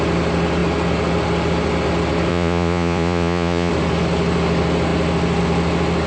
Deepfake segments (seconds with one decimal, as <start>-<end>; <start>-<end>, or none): 2.3-3.7